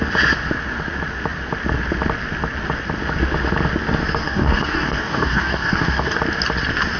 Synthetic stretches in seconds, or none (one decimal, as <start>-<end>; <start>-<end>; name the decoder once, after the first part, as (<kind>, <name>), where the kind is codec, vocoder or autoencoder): 4.2-6.2 (codec, DAC)